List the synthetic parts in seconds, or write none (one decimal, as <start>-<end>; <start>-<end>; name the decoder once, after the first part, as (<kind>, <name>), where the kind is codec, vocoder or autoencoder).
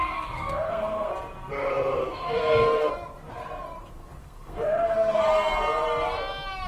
0.0-1.1 (codec, SNAC); 2.0-2.9; 4.2-5.2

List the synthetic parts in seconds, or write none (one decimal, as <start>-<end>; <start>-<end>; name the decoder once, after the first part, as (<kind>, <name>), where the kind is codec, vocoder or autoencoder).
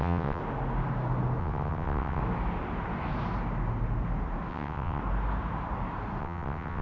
0.0-0.4 (vocoder, WaveNeXt); 1.4-2.2; 4.5-5.0; 6.2-6.8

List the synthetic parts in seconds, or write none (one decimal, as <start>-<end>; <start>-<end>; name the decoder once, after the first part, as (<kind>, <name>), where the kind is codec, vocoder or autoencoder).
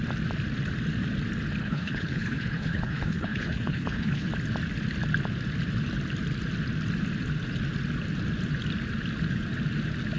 1.6-4.3 (codec, HILCodec)